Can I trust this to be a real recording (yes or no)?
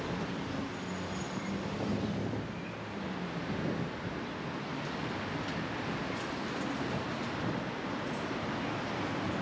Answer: yes